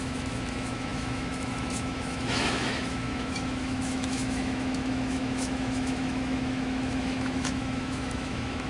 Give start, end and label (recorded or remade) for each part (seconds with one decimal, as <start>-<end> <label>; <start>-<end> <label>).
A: 0.0-8.7 remade